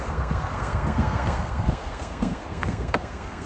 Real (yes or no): no